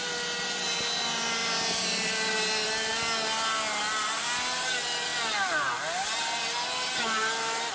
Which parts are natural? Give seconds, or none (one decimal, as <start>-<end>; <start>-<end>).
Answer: 0.0-7.7